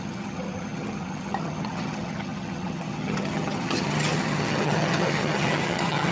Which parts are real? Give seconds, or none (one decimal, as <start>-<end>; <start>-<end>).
none